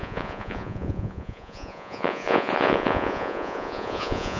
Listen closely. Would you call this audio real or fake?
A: fake